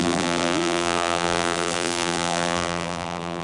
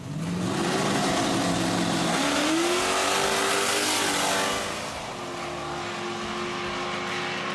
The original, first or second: second